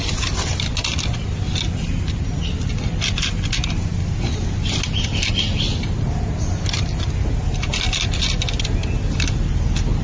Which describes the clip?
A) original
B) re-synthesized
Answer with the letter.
A